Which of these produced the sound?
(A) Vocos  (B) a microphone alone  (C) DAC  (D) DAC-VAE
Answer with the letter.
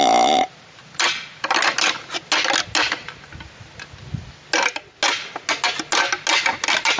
B